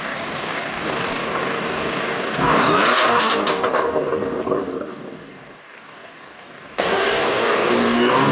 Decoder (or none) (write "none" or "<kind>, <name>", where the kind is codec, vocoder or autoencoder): codec, DAC